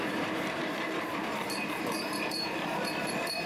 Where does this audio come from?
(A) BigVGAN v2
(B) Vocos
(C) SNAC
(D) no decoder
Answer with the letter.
A